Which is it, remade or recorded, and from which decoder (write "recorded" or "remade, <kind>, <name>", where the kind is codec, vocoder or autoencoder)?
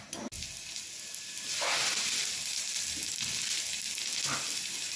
recorded